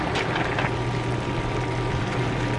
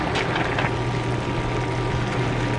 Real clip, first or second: second